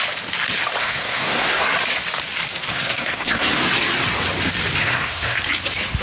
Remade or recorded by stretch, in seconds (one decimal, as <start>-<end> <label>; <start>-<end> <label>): 0.0-0.8 recorded; 0.8-1.6 remade; 1.6-2.7 recorded; 2.7-3.6 remade; 3.6-4.8 recorded; 4.8-5.4 remade; 5.4-6.0 recorded